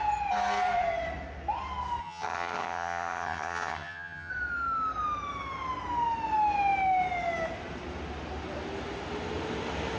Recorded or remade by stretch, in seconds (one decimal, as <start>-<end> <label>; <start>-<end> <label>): 0.0-2.0 recorded; 2.0-4.3 remade; 4.3-10.0 recorded